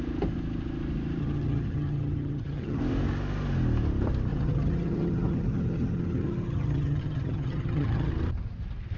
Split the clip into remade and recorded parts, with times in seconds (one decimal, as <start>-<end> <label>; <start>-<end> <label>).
0.0-1.2 recorded; 1.2-2.8 remade; 2.8-4.3 recorded; 4.3-8.1 remade; 8.1-9.0 recorded

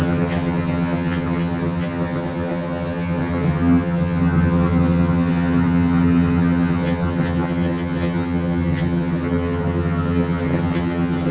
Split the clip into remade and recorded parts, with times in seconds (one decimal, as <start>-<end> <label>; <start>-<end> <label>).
0.0-11.3 remade

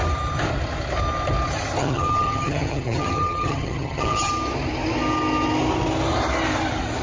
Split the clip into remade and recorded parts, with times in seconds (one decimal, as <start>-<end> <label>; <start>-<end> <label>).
0.0-1.8 recorded; 1.8-4.3 remade; 4.3-7.0 recorded

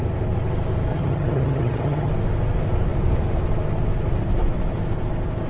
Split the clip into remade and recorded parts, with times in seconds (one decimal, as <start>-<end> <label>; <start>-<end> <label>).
0.0-0.9 recorded; 0.9-2.1 remade; 2.1-5.5 recorded

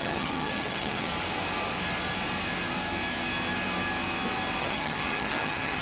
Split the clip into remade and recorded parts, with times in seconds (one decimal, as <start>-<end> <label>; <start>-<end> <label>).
0.0-1.1 remade; 1.1-4.6 recorded; 4.6-5.8 remade

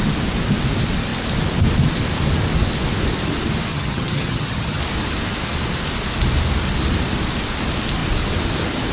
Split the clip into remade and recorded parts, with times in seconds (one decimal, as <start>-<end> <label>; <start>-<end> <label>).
0.0-3.7 recorded; 3.7-4.8 remade; 4.8-8.9 recorded